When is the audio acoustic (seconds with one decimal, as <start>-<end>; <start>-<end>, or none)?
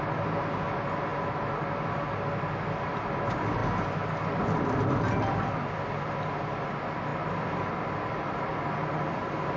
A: 0.0-9.6